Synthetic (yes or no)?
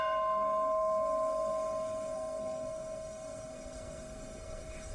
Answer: yes